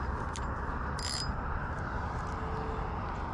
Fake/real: real